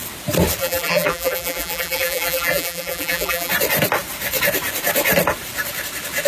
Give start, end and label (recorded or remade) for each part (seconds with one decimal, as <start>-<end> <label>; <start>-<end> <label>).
0.0-0.6 recorded; 0.6-3.5 remade; 3.5-6.3 recorded